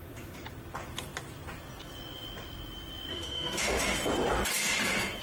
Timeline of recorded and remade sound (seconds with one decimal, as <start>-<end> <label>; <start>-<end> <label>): 0.0-3.1 recorded; 3.1-3.8 remade; 3.8-5.2 recorded